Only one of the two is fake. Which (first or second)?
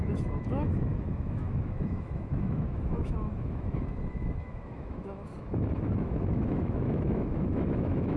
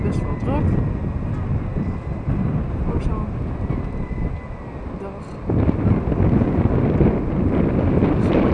first